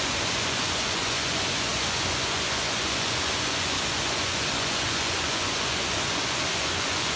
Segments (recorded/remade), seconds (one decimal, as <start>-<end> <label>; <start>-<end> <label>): 0.0-7.2 remade